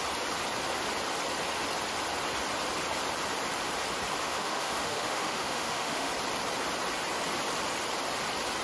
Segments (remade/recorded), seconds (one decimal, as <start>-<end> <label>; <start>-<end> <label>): 0.0-4.2 recorded; 4.2-6.1 remade; 6.1-8.6 recorded